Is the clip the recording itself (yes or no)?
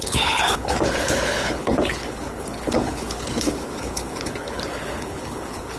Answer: no